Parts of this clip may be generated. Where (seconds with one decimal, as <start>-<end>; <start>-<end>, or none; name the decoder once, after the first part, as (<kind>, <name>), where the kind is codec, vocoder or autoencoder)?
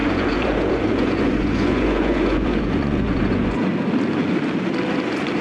0.0-3.7 (vocoder, Vocos)